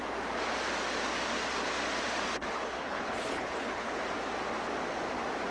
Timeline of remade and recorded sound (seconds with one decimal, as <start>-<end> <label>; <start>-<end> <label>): 0.0-2.4 recorded; 2.4-4.0 remade; 4.0-5.5 recorded